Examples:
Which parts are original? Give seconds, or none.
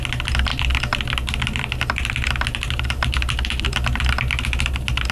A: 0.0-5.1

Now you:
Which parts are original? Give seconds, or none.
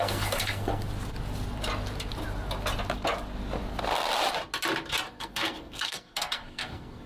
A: 0.8-5.1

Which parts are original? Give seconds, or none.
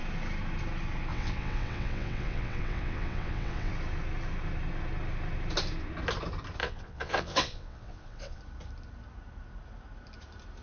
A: 0.0-1.1; 3.7-6.6; 8.4-10.6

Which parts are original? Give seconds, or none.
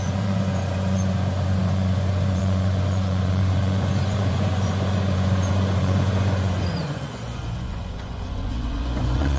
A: none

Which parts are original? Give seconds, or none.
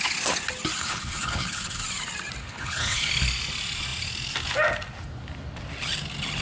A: 0.0-0.8; 1.8-2.4; 3.1-6.4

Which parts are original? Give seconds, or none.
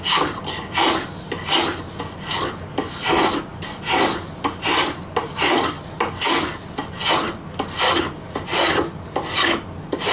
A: 0.0-10.1